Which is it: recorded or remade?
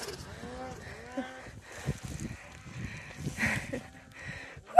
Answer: recorded